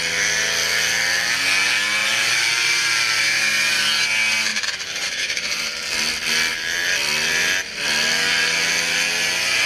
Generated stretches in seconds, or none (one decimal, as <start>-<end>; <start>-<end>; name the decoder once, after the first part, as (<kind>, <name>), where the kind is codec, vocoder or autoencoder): 2.0-3.2 (vocoder, BigVGAN v2); 4.5-5.9

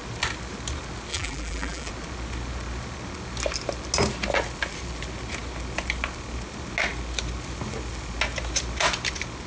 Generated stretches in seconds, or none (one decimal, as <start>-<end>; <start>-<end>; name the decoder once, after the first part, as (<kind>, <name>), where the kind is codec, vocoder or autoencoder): 1.1-1.9 (vocoder, BigVGAN v2)